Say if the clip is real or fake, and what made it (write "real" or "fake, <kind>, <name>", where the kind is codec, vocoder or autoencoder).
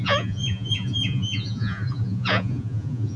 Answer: fake, vocoder, Vocos